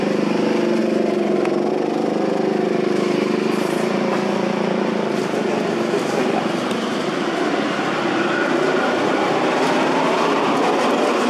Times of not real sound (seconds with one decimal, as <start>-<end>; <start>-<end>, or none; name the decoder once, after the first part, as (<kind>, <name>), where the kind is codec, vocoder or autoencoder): none